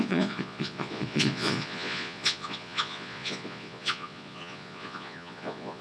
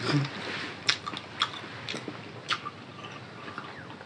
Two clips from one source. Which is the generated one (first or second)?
first